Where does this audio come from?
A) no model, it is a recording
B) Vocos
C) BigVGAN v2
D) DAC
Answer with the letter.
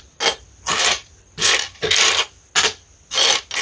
A